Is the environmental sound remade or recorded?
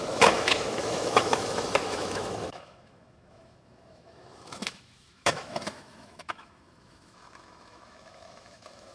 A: remade